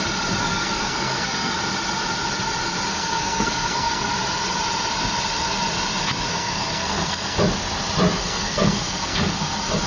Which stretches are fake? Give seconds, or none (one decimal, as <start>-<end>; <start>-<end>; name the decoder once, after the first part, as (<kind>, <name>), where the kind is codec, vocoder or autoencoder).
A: 0.4-1.6 (codec, SNAC); 2.9-4.1; 6.3-7.4; 8.2-9.4